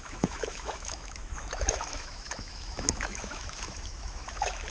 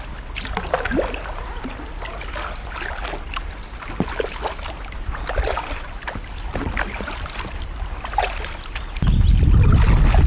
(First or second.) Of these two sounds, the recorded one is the second